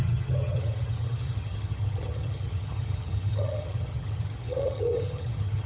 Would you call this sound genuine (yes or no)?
no